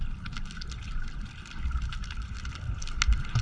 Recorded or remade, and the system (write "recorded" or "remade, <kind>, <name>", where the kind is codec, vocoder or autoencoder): recorded